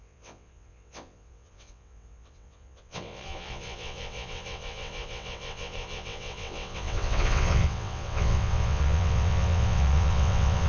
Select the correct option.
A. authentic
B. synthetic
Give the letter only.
B